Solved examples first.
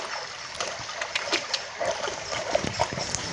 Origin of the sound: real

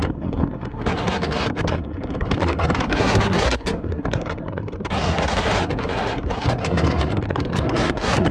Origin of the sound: fake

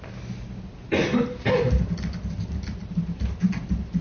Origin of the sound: real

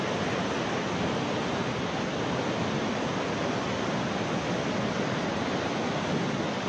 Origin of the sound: real